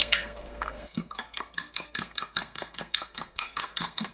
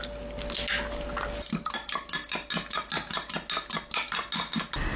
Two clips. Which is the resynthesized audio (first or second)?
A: first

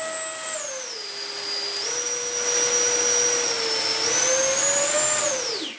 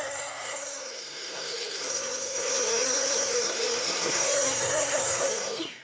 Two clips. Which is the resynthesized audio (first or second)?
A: second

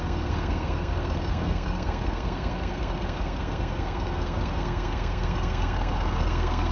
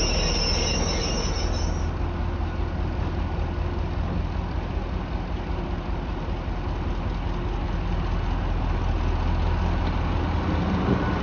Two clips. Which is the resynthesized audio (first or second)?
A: first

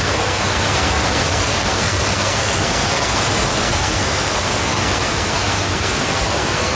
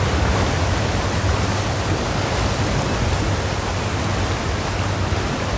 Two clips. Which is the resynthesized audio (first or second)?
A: first